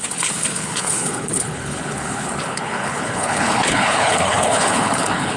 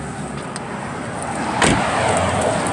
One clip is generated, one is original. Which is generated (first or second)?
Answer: first